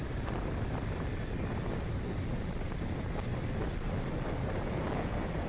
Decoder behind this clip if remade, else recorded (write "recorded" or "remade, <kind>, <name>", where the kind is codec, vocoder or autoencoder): recorded